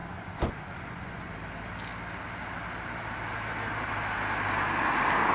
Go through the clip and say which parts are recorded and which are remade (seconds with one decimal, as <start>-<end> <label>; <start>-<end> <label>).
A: 0.0-1.3 remade; 1.3-5.3 recorded